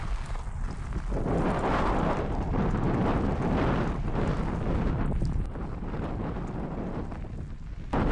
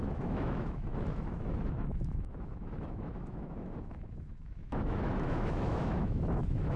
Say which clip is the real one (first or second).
first